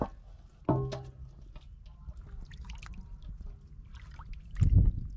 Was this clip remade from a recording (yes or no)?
no